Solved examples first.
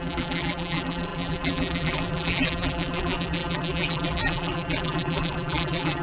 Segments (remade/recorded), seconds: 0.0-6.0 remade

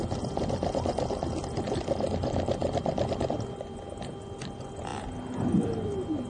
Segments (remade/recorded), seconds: 0.0-6.3 recorded

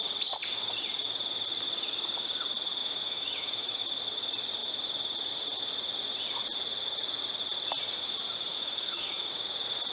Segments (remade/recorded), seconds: 0.0-2.8 recorded; 2.8-3.8 remade; 3.8-8.5 recorded; 8.5-9.4 remade; 9.4-9.9 recorded

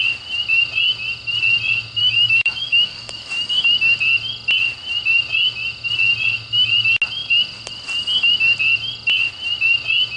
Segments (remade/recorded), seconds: 0.0-2.0 recorded; 2.0-3.6 remade; 3.6-10.2 recorded

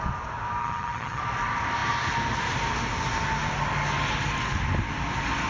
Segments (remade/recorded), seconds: 0.0-0.6 recorded; 0.6-1.2 remade; 1.2-5.5 recorded

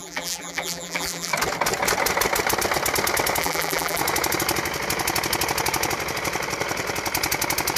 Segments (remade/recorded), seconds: 0.0-1.3 remade; 1.3-3.4 recorded; 3.4-4.0 remade; 4.0-7.8 recorded